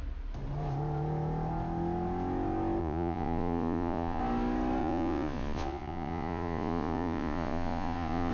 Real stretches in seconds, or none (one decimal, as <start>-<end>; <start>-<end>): 0.0-2.8; 4.2-4.8